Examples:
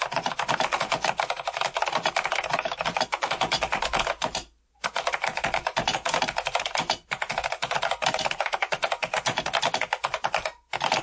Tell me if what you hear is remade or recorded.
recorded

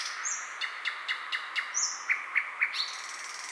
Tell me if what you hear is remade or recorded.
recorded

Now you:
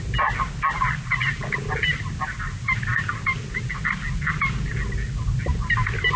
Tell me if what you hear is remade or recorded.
recorded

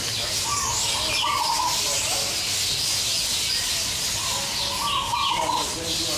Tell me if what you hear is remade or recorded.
recorded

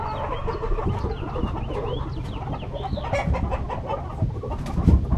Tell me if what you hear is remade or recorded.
recorded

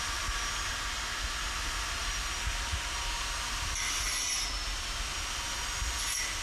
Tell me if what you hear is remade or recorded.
recorded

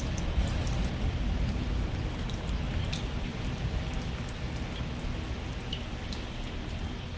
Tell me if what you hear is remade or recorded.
recorded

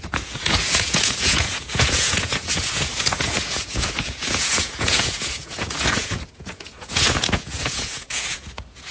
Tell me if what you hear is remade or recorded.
remade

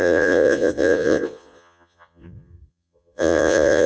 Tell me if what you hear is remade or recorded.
remade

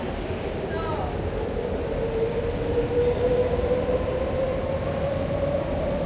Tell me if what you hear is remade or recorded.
recorded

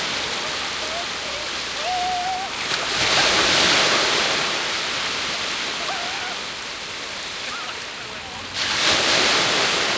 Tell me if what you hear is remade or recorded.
recorded